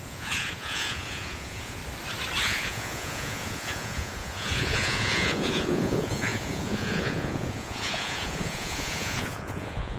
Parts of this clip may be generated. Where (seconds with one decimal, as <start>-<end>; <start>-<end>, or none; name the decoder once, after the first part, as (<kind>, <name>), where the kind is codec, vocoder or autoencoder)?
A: 0.0-1.8 (vocoder, Vocos); 2.4-10.0